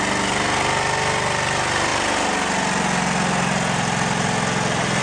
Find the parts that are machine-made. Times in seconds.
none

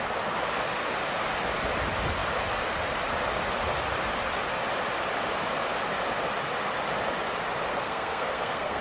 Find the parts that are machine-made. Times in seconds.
7.7-8.8 (codec, SNAC)

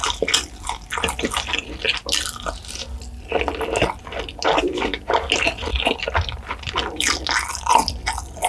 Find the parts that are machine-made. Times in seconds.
none

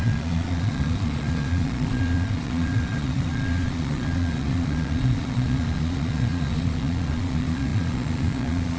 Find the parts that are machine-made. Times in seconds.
0.0-8.8 (vocoder, Vocos)

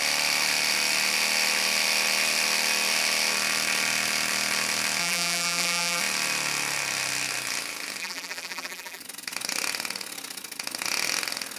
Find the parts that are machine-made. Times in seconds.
5.0-6.0 (vocoder, BigVGAN v2); 8.0-9.0

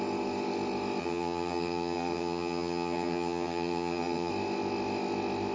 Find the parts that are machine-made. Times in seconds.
1.0-4.3 (vocoder, HiFi-GAN)

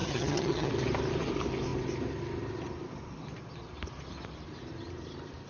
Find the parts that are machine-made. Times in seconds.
0.0-0.7 (vocoder, HiFi-GAN)